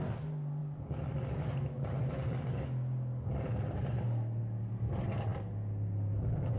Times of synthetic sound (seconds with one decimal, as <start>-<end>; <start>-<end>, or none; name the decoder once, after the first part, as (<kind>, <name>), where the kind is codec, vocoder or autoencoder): none